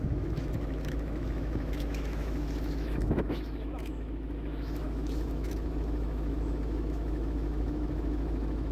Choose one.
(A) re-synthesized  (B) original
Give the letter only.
A